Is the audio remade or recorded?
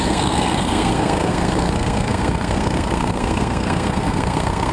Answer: remade